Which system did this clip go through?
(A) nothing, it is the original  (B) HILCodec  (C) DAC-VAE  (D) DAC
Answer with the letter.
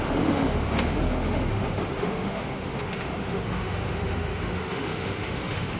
C